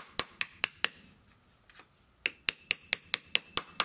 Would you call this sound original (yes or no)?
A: yes